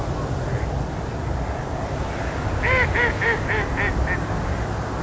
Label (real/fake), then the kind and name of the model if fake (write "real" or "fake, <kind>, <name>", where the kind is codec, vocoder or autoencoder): real